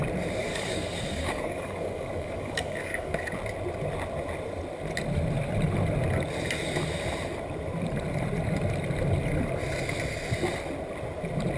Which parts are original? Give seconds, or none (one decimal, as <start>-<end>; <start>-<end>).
0.0-0.4; 3.3-11.6